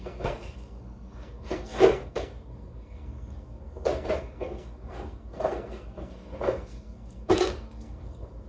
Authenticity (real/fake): fake